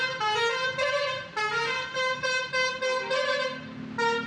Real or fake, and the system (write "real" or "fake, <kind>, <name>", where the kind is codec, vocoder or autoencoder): real